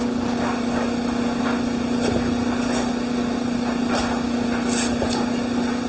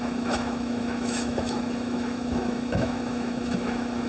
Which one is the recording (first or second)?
first